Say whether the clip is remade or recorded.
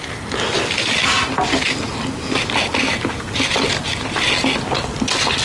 recorded